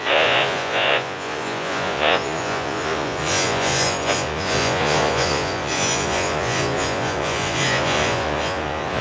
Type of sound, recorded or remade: remade